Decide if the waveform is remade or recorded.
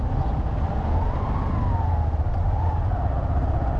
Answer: recorded